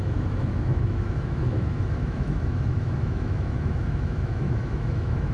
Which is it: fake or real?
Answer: fake